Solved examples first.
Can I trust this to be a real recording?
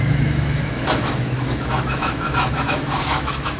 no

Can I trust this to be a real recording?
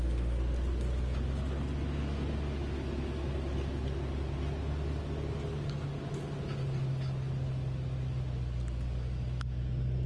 yes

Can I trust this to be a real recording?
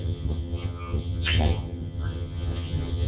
no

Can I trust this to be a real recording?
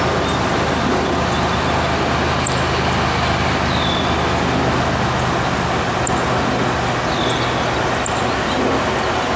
yes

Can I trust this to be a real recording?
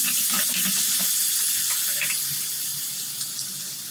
yes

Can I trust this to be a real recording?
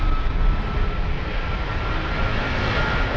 yes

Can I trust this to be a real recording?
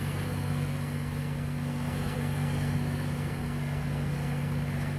no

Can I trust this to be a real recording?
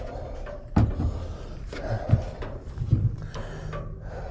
yes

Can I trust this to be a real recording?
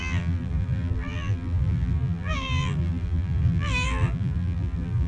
no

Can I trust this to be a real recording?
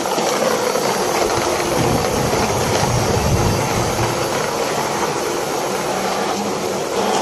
yes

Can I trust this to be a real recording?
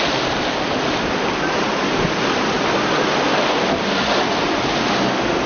yes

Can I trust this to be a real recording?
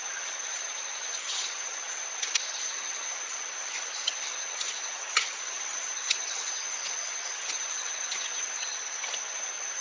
no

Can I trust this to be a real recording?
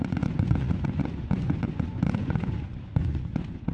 no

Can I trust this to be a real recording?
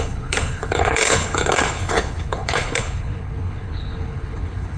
no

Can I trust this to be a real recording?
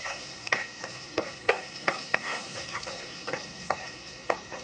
no